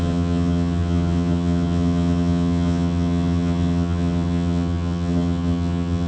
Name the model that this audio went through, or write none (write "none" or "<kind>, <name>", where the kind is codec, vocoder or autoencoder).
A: vocoder, HiFi-GAN